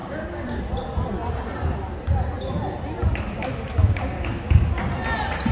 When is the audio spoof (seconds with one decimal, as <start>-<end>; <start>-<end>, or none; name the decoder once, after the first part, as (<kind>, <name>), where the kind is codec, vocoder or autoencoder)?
0.0-0.6 (codec, DAC); 3.8-4.7